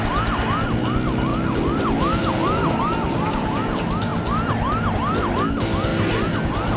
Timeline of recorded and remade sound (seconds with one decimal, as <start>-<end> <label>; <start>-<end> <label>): 0.0-6.8 recorded